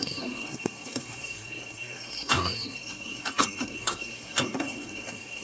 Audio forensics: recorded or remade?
remade